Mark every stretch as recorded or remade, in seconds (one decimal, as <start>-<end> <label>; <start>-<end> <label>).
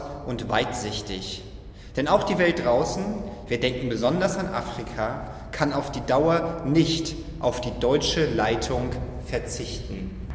0.0-10.3 recorded